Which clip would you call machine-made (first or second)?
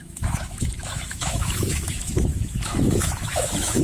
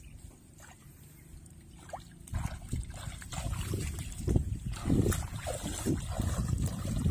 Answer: first